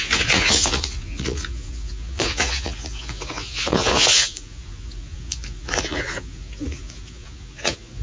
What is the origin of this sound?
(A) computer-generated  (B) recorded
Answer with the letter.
A